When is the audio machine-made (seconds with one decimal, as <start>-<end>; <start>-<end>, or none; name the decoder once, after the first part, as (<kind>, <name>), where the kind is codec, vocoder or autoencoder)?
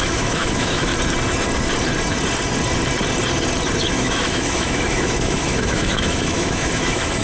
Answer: 0.0-0.9 (autoencoder, DAC-VAE); 3.8-7.2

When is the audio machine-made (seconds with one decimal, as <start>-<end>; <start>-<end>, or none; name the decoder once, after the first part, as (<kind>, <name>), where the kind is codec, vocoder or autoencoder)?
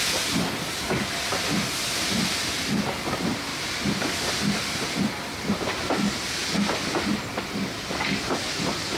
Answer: none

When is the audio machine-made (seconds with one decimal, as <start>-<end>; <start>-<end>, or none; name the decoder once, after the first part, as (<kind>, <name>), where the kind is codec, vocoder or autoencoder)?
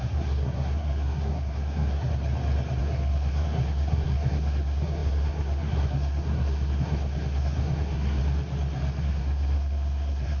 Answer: 0.0-2.1 (codec, SNAC); 2.8-8.2; 9.0-10.4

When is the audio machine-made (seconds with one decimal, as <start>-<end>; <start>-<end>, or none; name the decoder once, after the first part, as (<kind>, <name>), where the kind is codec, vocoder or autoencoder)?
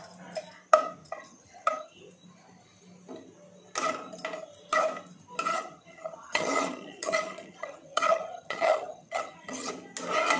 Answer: 1.0-2.0 (vocoder, HiFi-GAN); 5.5-9.7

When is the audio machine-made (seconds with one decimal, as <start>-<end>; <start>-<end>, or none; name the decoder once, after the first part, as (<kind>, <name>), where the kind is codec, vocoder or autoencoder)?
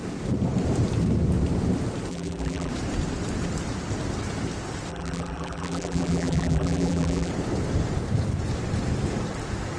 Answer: 2.1-2.7 (vocoder, BigVGAN v2); 4.9-7.3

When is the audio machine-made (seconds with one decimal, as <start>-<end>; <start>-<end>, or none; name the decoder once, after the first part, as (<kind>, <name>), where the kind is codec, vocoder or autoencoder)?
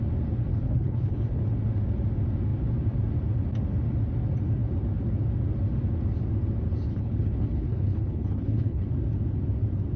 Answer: 0.5-1.4 (codec, HILCodec); 6.9-8.9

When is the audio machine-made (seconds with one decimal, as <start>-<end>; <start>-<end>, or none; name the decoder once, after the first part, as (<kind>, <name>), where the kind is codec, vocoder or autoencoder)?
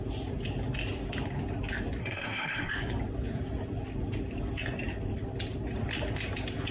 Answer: 2.0-2.7 (codec, SNAC)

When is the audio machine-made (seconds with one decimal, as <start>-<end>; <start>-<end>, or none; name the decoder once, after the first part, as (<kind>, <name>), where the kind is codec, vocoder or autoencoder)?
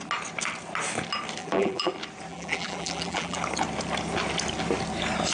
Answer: 1.4-1.9 (vocoder, BigVGAN v2); 2.3-3.4